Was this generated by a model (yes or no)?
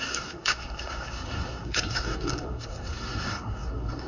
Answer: yes